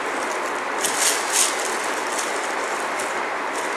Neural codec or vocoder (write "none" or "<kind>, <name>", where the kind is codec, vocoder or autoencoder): none